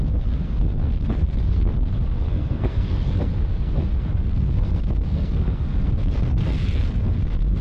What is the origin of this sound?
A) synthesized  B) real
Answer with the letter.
A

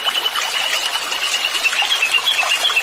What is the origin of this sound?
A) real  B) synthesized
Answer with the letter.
A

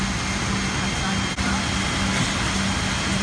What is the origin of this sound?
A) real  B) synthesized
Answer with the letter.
A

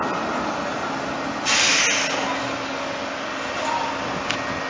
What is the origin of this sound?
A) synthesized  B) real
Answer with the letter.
B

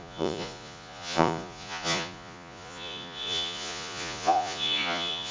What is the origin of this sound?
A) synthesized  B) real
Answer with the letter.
A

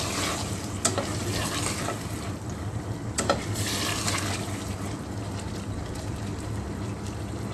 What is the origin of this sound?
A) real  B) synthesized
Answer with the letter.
A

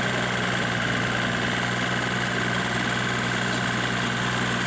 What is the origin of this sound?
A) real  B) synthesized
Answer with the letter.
A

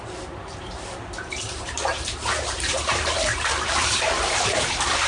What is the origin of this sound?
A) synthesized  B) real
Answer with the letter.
A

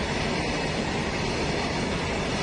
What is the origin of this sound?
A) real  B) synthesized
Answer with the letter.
A